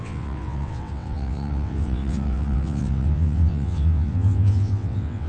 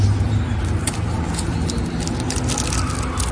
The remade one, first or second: first